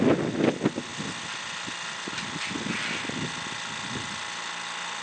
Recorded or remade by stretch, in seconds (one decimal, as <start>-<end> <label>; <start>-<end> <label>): 0.0-5.0 recorded